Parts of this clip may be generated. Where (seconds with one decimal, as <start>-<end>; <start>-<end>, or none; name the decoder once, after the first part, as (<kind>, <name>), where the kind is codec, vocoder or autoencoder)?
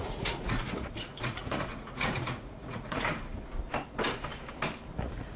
0.0-3.1 (vocoder, Vocos); 5.0-5.4